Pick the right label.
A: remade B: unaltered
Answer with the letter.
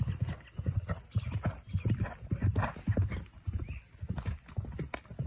B